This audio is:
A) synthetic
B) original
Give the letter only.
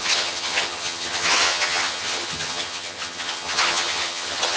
A